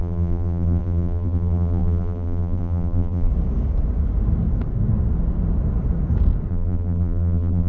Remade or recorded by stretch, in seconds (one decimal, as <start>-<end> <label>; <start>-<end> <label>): 0.0-3.3 remade; 3.3-6.5 recorded; 6.5-7.7 remade